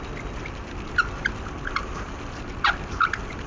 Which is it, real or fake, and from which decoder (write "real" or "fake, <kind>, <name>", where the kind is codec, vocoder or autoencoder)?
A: real